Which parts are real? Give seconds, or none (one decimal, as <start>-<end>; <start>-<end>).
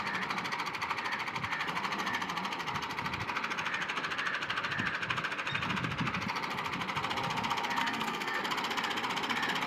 0.0-7.8; 8.4-9.7